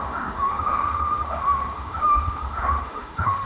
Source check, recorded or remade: remade